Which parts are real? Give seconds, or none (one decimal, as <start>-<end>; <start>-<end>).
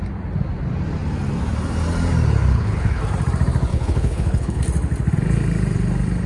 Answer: 0.0-2.5; 3.0-3.7; 4.6-6.3